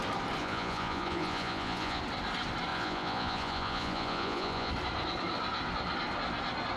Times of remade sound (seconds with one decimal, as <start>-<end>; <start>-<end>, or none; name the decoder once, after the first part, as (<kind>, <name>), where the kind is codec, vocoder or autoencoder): 0.4-2.0 (vocoder, Vocos); 2.7-4.7